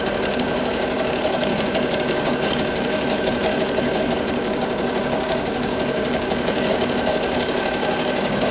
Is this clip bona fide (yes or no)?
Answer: no